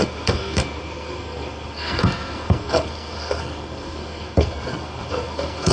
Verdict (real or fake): fake